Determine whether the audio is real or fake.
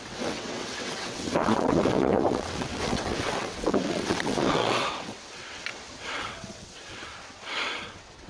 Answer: fake